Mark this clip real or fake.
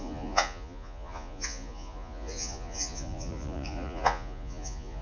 fake